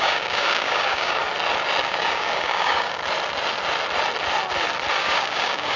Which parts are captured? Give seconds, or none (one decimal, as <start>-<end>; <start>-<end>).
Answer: 1.2-1.8; 3.0-5.0